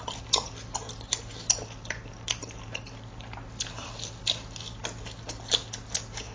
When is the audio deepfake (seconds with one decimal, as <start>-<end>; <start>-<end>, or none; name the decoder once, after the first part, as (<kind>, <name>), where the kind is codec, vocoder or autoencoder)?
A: none